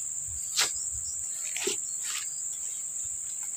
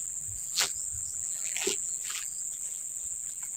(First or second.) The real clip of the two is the first